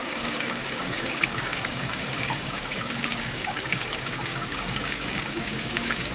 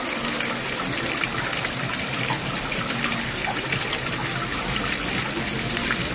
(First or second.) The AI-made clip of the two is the first